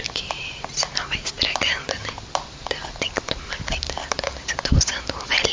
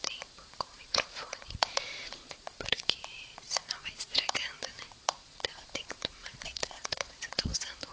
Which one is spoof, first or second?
second